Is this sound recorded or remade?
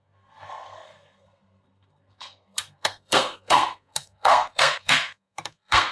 remade